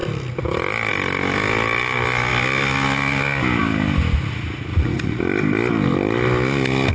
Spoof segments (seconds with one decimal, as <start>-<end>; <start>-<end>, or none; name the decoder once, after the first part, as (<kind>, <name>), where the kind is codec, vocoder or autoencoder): 4.7-5.2 (vocoder, Vocos)